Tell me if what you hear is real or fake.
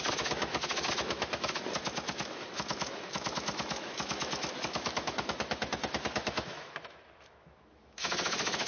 fake